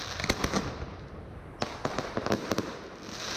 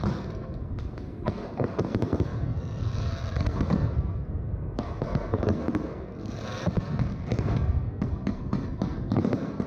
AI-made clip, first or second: second